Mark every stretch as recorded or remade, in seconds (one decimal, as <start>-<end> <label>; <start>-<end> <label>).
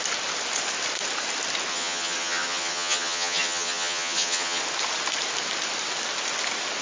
0.0-1.7 recorded; 1.7-4.6 remade; 4.6-6.8 recorded